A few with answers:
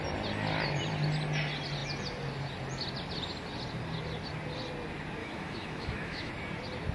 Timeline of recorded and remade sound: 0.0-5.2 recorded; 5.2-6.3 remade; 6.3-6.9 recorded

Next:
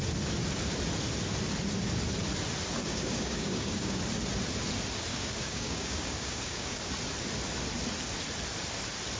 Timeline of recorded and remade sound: 0.0-2.8 recorded; 2.8-4.0 remade; 4.0-5.1 recorded; 5.1-6.9 remade; 6.9-9.2 recorded

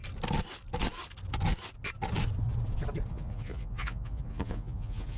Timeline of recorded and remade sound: 0.0-3.1 recorded; 3.1-5.2 remade

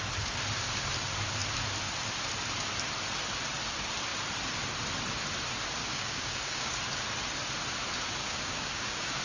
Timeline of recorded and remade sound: 0.0-5.8 recorded; 5.8-6.7 remade; 6.7-8.2 recorded; 8.2-9.2 remade

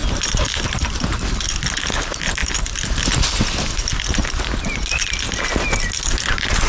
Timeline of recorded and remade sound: 0.0-0.6 remade; 0.6-2.4 recorded; 2.4-3.9 remade; 3.9-6.7 recorded